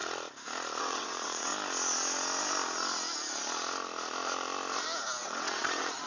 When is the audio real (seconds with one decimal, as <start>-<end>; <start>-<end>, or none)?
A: 0.0-0.8; 1.5-5.2